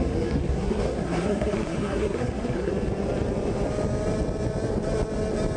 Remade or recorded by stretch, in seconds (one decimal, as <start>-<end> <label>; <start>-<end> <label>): 0.0-2.7 remade; 2.7-5.6 recorded